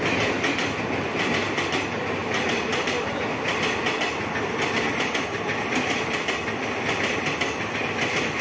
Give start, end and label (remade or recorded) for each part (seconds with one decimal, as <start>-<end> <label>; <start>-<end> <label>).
0.0-8.4 recorded